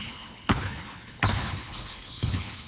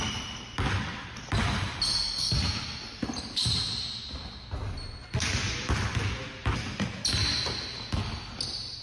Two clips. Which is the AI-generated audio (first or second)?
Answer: first